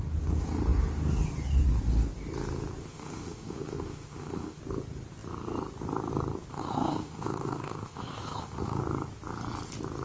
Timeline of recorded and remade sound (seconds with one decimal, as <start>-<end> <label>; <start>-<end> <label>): 0.0-2.8 recorded; 2.8-4.6 remade; 4.6-6.5 recorded; 6.5-8.8 remade; 8.8-10.0 recorded